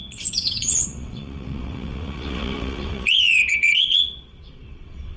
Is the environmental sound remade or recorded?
remade